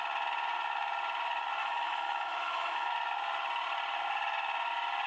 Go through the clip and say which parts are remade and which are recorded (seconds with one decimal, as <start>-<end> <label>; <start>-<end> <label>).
0.0-1.6 recorded; 1.6-2.9 remade; 2.9-5.1 recorded